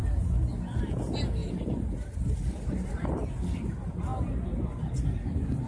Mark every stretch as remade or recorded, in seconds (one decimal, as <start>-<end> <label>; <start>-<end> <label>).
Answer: 0.0-5.7 recorded